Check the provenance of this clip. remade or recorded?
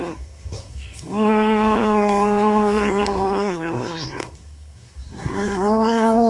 remade